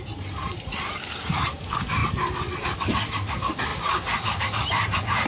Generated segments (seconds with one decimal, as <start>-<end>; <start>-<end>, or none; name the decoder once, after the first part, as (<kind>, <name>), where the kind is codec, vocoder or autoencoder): 0.0-2.0 (vocoder, BigVGAN v2); 3.3-3.7; 4.4-5.3